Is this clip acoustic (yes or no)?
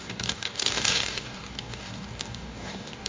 no